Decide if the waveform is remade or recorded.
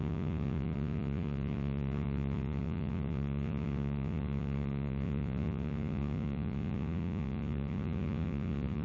remade